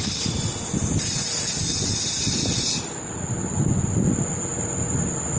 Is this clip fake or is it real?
real